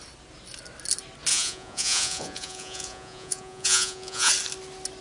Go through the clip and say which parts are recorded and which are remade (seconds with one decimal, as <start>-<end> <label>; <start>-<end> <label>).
0.0-1.3 recorded; 1.3-4.3 remade; 4.3-5.0 recorded